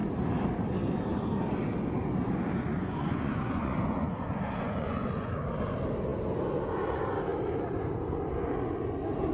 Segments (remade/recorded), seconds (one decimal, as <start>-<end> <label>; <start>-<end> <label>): 0.0-2.7 recorded; 2.7-5.4 remade; 5.4-9.3 recorded